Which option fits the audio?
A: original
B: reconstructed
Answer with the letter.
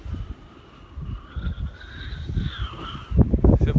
A